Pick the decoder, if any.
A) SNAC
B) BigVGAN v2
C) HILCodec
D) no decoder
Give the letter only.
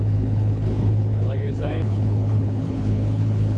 C